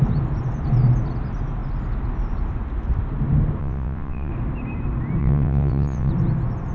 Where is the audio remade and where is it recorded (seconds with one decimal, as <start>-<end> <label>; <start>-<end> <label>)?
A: 0.0-3.6 recorded; 3.6-4.3 remade; 4.3-5.2 recorded; 5.2-6.1 remade; 6.1-6.7 recorded